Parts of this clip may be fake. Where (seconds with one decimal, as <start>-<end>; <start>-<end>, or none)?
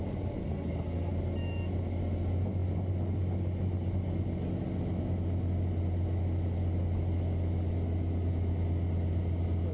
0.4-1.1